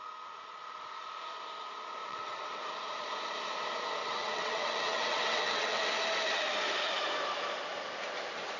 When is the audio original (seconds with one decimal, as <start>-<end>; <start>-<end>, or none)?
0.0-2.0; 2.6-4.0; 5.8-8.6